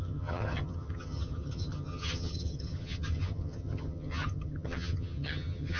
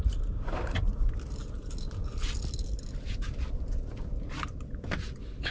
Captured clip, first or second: second